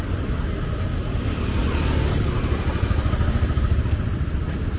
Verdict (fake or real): real